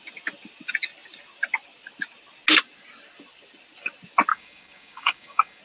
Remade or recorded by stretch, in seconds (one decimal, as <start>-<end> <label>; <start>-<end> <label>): 0.0-4.3 recorded; 4.3-5.6 remade

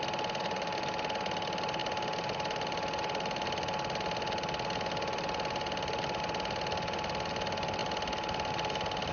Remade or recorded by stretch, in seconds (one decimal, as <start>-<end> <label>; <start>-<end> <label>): 0.0-9.1 recorded

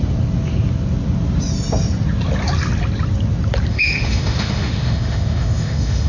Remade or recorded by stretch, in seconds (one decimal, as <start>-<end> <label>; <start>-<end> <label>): 0.0-3.7 recorded; 3.7-6.1 remade

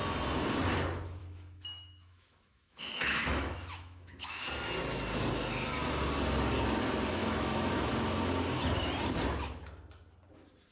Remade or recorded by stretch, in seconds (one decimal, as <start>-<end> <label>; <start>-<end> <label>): 0.0-1.2 recorded; 1.2-4.5 remade; 4.5-7.2 recorded; 7.2-7.9 remade; 7.9-10.7 recorded

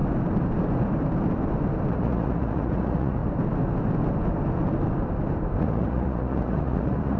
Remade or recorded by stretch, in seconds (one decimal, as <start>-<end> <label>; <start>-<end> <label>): 0.0-1.9 recorded; 1.9-3.2 remade; 3.2-5.6 recorded; 5.6-7.2 remade